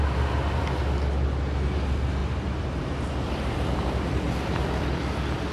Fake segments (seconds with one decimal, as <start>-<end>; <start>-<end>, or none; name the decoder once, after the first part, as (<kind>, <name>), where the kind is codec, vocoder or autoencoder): 2.2-4.6 (vocoder, BigVGAN v2)